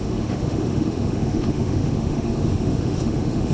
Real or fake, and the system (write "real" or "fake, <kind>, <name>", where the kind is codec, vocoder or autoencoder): fake, autoencoder, DAC-VAE